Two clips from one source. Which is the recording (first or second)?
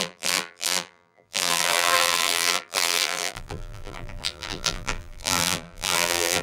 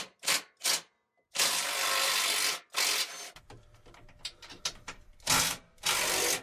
second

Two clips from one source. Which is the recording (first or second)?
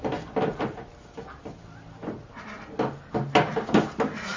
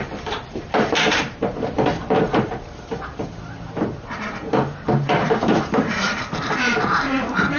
first